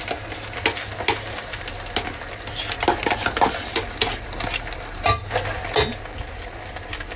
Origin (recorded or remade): recorded